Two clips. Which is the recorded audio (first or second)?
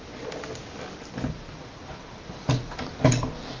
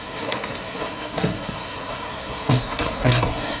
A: first